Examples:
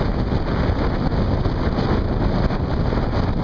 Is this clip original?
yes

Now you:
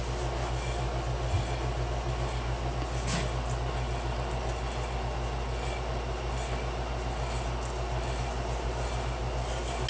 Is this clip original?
yes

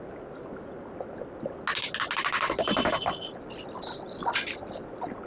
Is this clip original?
yes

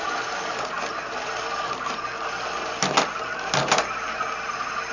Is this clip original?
yes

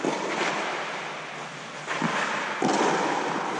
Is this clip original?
yes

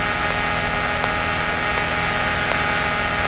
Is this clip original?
yes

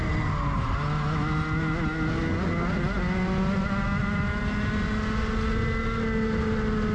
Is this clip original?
yes